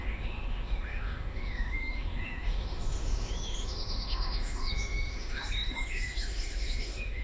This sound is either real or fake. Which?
fake